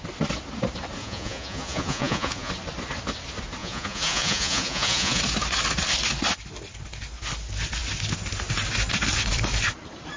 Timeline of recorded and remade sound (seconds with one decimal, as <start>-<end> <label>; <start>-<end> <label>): 0.0-1.0 recorded; 1.0-2.5 remade; 2.5-3.6 recorded; 3.6-5.2 remade; 5.2-10.2 recorded